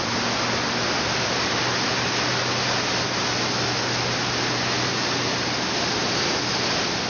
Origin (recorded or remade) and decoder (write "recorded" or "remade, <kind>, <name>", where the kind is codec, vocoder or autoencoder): recorded